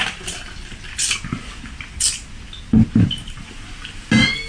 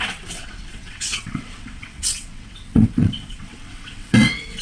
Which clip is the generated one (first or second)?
second